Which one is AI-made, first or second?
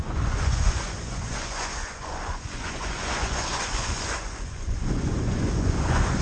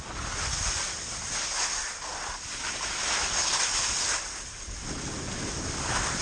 first